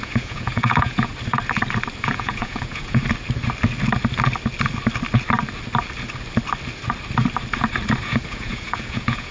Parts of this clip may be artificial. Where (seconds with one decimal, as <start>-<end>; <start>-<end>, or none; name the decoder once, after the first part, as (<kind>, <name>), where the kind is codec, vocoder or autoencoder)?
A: 0.0-1.1 (vocoder, Vocos); 2.0-3.0; 8.0-9.3